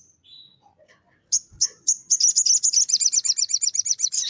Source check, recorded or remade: recorded